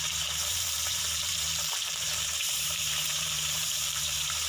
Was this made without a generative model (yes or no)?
no